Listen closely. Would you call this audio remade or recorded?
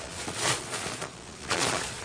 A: remade